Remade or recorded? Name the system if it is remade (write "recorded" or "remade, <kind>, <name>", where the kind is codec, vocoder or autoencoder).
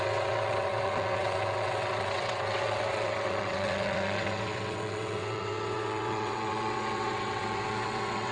remade, vocoder, WaveNeXt